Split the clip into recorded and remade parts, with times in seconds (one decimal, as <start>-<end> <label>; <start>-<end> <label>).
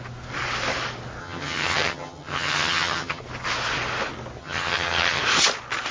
0.0-1.2 recorded; 1.2-3.2 remade; 3.2-4.4 recorded; 4.4-5.2 remade; 5.2-5.9 recorded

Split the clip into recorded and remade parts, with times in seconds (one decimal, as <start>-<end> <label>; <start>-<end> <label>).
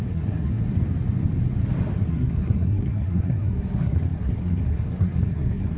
0.0-0.6 remade; 0.6-2.1 recorded; 2.1-5.8 remade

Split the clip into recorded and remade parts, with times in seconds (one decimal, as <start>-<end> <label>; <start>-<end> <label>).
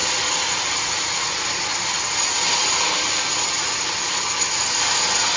0.0-5.4 recorded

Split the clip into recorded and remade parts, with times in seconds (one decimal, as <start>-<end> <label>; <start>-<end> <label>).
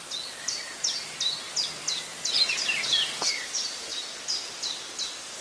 0.0-5.4 recorded